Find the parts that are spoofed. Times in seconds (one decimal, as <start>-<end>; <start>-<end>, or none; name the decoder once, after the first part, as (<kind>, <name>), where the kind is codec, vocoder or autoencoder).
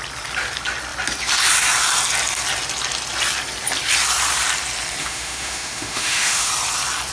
5.0-6.5 (autoencoder, DAC-VAE)